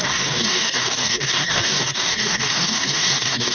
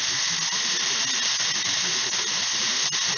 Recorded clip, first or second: second